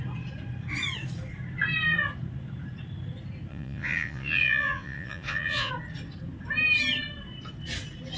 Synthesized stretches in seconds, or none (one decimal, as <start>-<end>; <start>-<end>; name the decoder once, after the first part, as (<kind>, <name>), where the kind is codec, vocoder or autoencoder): 3.5-5.7 (vocoder, Vocos)